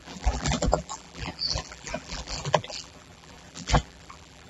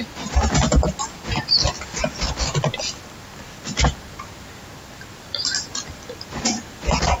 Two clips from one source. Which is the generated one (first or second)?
first